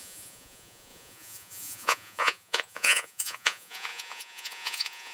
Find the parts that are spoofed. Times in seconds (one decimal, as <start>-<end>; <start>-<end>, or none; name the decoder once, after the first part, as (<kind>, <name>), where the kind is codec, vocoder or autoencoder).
0.0-5.1 (vocoder, Vocos)